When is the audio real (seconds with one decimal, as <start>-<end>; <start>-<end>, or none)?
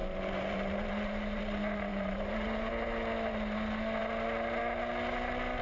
1.4-1.9; 2.7-5.6